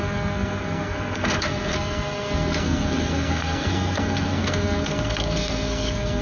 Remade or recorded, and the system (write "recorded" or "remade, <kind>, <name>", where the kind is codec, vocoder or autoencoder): remade, codec, SNAC